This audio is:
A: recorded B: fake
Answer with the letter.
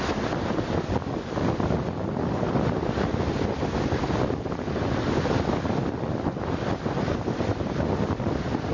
A